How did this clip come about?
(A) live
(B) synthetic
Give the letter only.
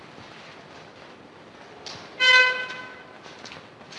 A